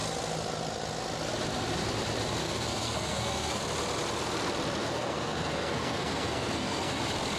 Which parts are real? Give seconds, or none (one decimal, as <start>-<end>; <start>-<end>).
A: 0.0-2.4; 3.6-4.8; 7.0-7.4